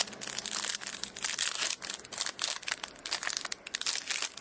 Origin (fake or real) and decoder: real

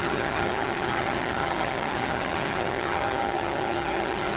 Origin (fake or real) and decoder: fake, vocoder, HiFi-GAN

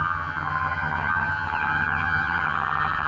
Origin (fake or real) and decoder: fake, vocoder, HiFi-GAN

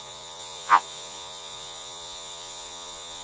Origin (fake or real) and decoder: fake, vocoder, Vocos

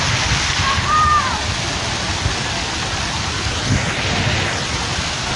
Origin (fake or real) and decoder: real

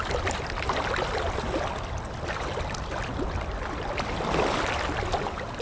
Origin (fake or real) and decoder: real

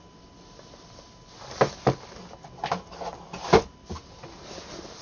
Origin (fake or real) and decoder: real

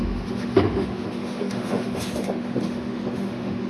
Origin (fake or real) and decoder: fake, autoencoder, DAC-VAE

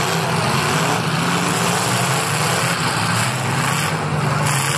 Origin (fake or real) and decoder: real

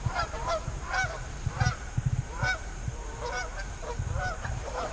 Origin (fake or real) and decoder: fake, vocoder, BigVGAN v2